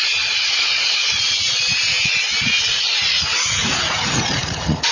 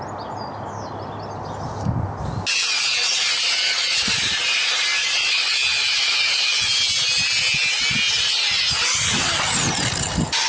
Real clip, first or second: second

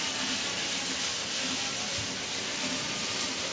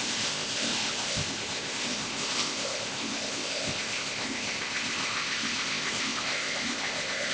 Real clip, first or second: first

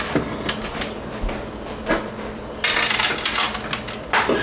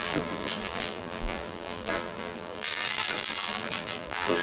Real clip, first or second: first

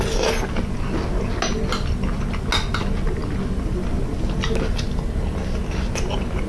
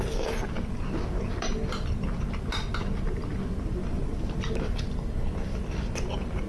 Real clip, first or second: first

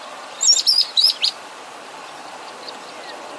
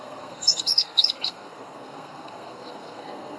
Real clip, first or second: first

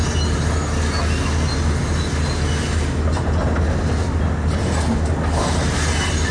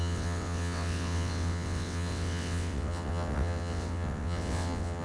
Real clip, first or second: first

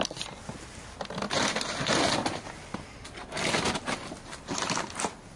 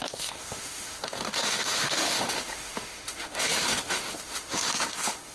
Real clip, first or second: first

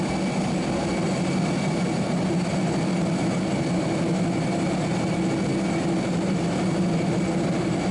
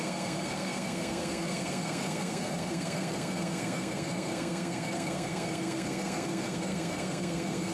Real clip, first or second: first